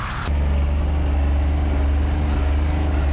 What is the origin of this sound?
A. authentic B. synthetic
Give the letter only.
A